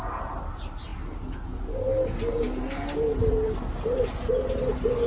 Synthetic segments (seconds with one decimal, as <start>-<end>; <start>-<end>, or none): none